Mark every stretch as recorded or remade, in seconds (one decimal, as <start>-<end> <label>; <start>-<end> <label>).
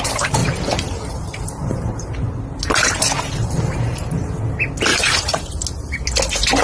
0.0-0.4 recorded; 0.4-4.4 remade; 4.4-4.9 recorded; 4.9-6.0 remade; 6.0-6.6 recorded